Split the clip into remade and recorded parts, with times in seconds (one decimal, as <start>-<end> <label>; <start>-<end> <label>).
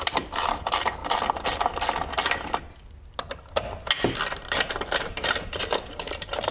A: 0.0-1.0 remade; 1.0-4.3 recorded; 4.3-6.5 remade